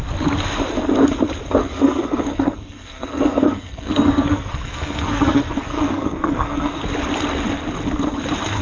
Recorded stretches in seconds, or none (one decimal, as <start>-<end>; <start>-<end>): 0.0-1.6; 6.8-8.6